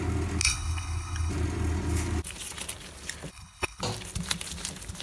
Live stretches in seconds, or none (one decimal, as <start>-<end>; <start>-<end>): 0.0-0.4; 1.3-3.3; 3.8-5.0